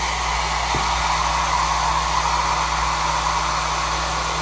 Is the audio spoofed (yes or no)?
no